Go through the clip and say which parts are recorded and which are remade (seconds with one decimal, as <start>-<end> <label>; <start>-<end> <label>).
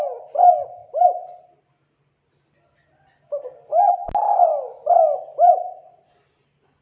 0.0-6.8 recorded